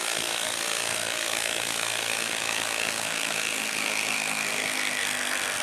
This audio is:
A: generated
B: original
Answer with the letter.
A